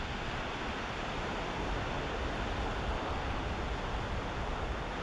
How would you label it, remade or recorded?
recorded